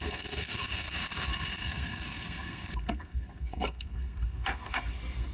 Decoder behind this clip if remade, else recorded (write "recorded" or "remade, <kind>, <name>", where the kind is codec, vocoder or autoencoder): remade, codec, SNAC